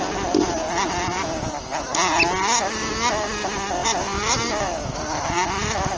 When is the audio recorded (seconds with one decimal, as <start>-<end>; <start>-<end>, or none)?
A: 0.0-1.1; 1.9-6.0